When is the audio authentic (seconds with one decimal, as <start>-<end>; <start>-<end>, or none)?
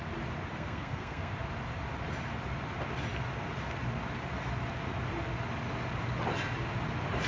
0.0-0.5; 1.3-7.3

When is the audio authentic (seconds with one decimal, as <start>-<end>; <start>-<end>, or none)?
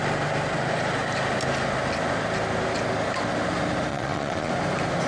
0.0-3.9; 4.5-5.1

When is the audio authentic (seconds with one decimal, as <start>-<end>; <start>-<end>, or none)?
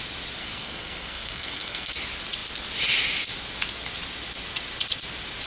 0.0-0.4; 1.9-5.5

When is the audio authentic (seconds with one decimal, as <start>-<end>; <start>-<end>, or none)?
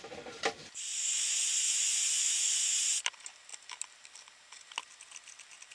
0.0-0.9; 3.0-5.7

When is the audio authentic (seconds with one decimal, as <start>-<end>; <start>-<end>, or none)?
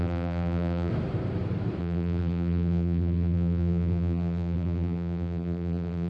0.9-1.8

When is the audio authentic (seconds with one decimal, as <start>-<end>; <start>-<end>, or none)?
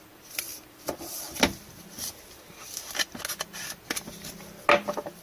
0.0-5.2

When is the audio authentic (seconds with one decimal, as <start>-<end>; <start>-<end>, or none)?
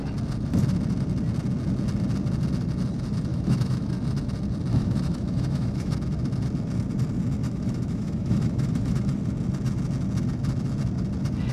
0.0-3.3; 3.9-4.7; 5.9-7.4; 9.1-11.5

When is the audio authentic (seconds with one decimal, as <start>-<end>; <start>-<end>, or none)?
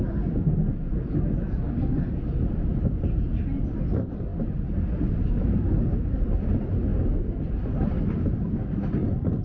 0.0-9.4